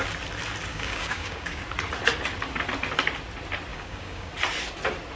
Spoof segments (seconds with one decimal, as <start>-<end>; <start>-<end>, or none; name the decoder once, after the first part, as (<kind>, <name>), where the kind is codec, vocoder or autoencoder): 0.7-1.6 (codec, DAC); 3.7-4.3